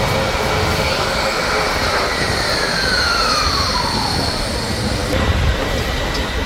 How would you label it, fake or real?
real